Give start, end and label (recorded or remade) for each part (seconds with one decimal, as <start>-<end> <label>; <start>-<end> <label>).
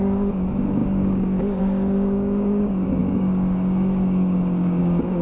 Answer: 0.0-5.2 remade